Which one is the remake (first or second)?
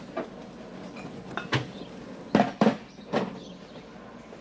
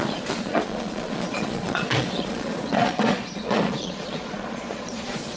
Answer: second